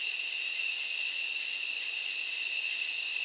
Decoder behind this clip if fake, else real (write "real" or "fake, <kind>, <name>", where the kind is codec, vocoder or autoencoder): real